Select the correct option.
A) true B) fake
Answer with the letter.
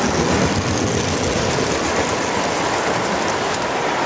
A